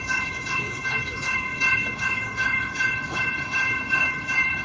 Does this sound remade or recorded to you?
remade